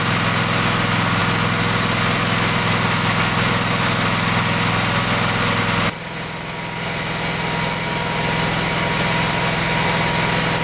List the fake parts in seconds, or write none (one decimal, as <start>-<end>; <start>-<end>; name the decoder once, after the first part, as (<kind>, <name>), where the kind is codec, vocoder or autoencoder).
none